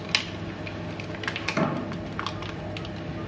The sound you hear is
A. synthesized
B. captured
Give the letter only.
B